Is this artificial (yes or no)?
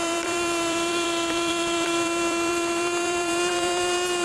yes